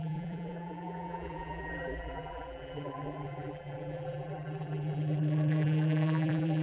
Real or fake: fake